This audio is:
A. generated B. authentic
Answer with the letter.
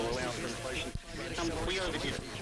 B